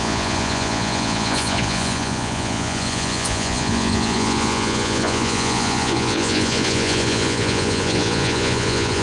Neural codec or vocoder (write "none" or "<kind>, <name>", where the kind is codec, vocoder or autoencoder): vocoder, Vocos